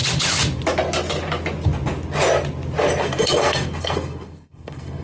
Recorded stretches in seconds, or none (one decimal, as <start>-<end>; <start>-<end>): 0.0-3.0